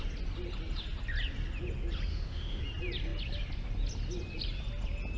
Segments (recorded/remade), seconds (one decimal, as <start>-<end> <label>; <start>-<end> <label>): 0.0-2.1 recorded; 2.1-2.6 remade; 2.6-5.2 recorded